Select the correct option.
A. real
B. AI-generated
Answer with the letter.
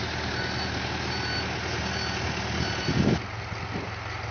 A